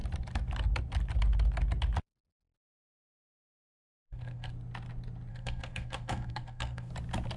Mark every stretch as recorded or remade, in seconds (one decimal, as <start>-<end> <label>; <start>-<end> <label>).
0.0-2.7 recorded; 2.7-4.5 remade; 4.5-5.3 recorded; 5.3-6.9 remade; 6.9-7.4 recorded